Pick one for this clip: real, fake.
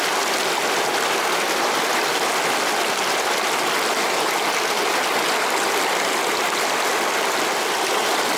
real